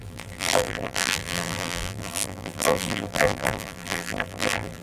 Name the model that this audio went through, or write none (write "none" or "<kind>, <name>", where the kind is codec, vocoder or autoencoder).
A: vocoder, BigVGAN v2